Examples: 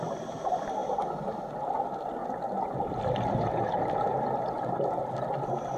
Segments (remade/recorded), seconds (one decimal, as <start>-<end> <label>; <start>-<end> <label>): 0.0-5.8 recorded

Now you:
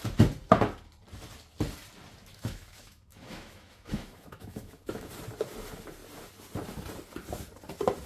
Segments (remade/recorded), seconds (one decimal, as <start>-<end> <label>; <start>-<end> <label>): 0.0-2.3 recorded; 2.3-5.1 remade; 5.1-8.1 recorded

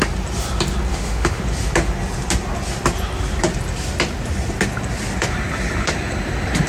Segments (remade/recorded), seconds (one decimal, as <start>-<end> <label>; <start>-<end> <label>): 0.0-0.9 recorded; 0.9-1.4 remade; 1.4-6.7 recorded

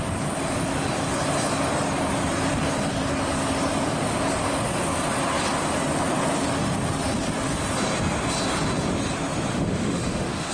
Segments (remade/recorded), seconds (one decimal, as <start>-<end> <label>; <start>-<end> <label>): 0.0-9.5 recorded; 9.5-10.5 remade

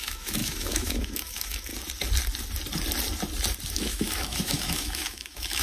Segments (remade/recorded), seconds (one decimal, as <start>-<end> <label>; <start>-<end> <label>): 0.0-1.7 remade; 1.7-3.7 recorded; 3.7-5.6 remade

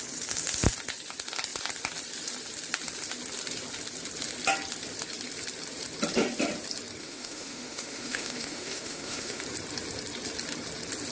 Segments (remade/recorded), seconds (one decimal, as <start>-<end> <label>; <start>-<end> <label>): 0.0-7.0 recorded; 7.0-9.4 remade; 9.4-11.1 recorded

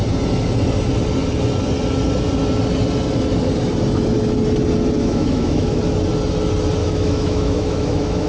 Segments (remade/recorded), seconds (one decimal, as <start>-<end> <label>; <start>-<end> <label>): 0.0-5.0 recorded; 5.0-5.8 remade; 5.8-6.8 recorded; 6.8-8.3 remade

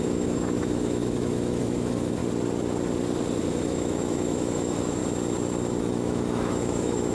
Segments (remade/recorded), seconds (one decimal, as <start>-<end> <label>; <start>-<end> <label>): 0.0-2.2 remade; 2.2-3.4 recorded; 3.4-5.0 remade; 5.0-5.8 recorded; 5.8-7.1 remade